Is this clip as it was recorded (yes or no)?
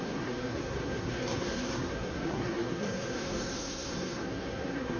no